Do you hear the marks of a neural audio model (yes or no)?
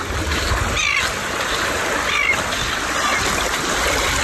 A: no